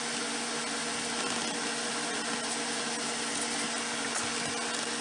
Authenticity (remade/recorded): recorded